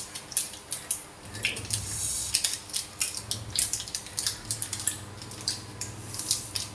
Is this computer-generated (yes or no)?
no